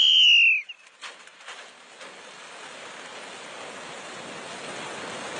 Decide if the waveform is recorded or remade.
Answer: recorded